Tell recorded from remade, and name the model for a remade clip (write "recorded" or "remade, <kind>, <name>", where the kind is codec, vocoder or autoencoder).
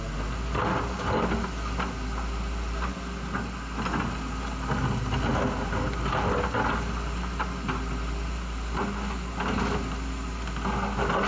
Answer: recorded